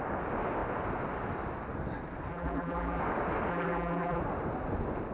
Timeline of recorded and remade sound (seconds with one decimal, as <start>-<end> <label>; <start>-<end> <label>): 0.0-2.3 recorded; 2.3-3.0 remade; 3.0-3.5 recorded; 3.5-4.2 remade; 4.2-5.1 recorded